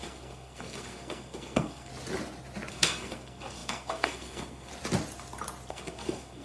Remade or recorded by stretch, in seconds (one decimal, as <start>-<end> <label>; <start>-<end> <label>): 0.0-1.9 remade; 1.9-2.7 recorded; 2.7-4.7 remade; 4.7-5.7 recorded; 5.7-6.4 remade